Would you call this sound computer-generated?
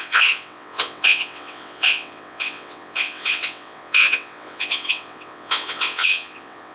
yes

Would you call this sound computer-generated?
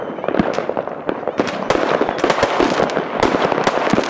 no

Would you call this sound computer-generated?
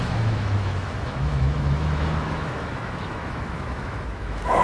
yes